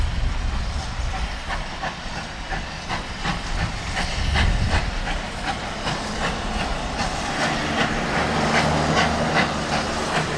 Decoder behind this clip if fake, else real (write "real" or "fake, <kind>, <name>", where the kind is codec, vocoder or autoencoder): real